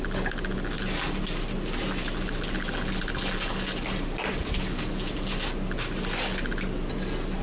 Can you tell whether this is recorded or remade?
recorded